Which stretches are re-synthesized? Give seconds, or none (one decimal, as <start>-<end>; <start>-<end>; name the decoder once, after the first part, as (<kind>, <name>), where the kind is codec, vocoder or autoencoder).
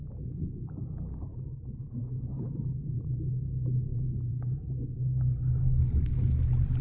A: 1.2-3.3 (vocoder, BigVGAN v2); 3.9-4.8